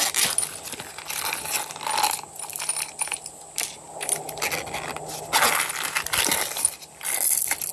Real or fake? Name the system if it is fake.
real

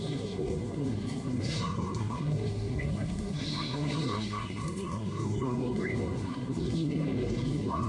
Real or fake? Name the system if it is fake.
fake, codec, SNAC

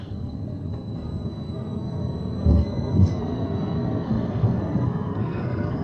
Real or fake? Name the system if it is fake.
fake, codec, SNAC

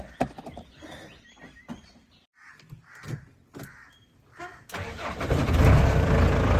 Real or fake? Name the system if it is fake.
real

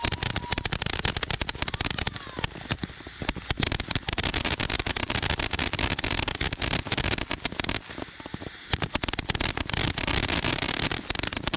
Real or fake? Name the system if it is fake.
real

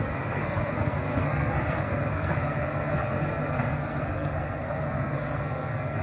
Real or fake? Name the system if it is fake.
fake, codec, SNAC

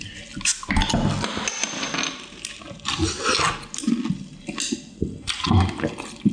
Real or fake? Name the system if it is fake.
real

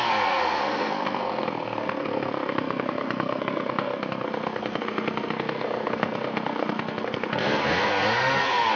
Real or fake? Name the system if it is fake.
fake, codec, SNAC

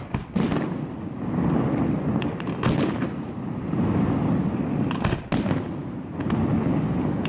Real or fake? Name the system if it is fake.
real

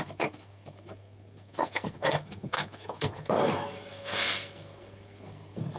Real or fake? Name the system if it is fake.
fake, codec, SNAC